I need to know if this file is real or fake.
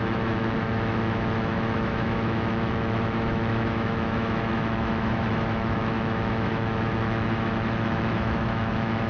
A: fake